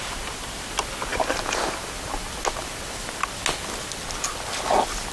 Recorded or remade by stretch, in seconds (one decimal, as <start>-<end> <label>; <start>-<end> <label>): 0.0-5.1 recorded